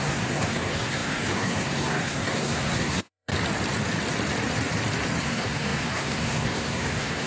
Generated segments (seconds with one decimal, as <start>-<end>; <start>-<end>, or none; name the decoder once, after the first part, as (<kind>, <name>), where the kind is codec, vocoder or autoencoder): 0.0-3.3 (codec, SNAC); 5.2-7.3